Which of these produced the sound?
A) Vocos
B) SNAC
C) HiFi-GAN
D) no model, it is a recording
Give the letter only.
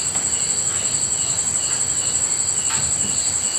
D